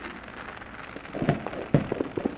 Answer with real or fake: real